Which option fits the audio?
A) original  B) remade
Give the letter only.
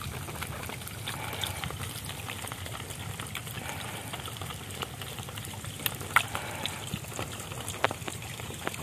A